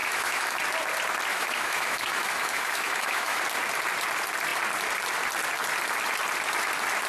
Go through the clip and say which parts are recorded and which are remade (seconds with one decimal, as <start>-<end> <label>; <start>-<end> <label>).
0.0-0.6 remade; 0.6-1.3 recorded; 1.3-3.4 remade; 3.4-7.1 recorded